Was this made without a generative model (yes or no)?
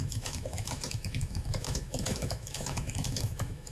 no